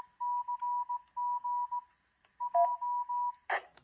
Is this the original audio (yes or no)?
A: yes